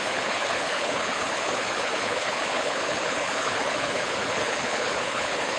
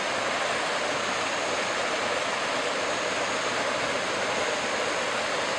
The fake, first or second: first